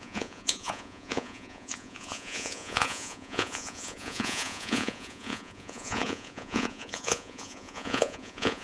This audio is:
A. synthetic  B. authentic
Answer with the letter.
A